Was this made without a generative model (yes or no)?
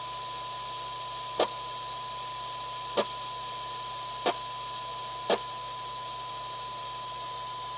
yes